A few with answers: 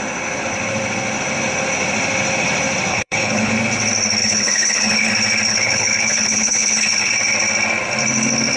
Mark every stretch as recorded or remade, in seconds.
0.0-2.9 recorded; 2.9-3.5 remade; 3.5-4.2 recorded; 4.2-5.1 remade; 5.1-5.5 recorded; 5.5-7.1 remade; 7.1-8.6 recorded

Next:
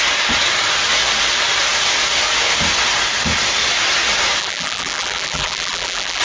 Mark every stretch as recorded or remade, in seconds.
0.0-4.4 recorded; 4.4-6.2 remade

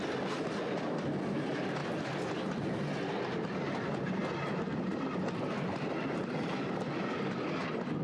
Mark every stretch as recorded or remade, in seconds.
0.0-8.0 recorded

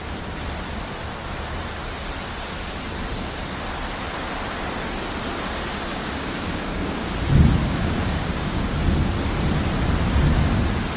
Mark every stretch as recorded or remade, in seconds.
0.0-5.9 recorded; 5.9-7.1 remade; 7.1-7.6 recorded; 7.6-8.8 remade; 8.8-11.0 recorded

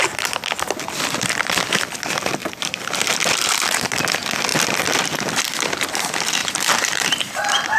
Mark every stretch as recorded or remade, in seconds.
0.0-2.4 recorded; 2.4-3.0 remade; 3.0-6.4 recorded; 6.4-7.8 remade

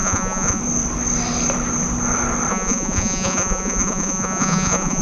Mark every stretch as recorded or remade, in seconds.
0.0-0.6 remade; 0.6-2.5 recorded; 2.5-5.0 remade

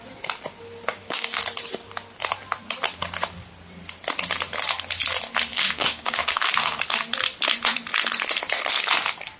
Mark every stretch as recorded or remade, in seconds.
0.0-0.9 recorded; 0.9-1.4 remade; 1.4-5.5 recorded; 5.5-6.5 remade; 6.5-9.4 recorded

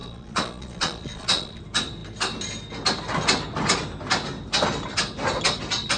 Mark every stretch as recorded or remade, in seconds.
0.0-1.6 remade; 1.6-6.0 recorded